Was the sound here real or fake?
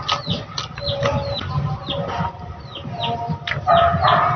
real